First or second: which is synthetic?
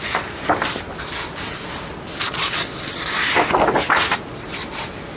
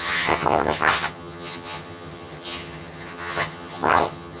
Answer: second